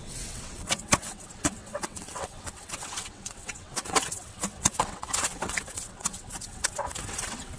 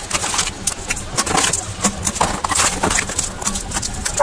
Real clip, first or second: second